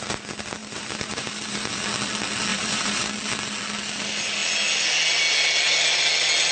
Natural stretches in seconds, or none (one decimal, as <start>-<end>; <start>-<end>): 0.0-0.6; 1.8-2.5; 3.1-6.5